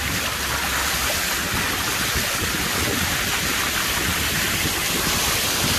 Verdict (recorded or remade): recorded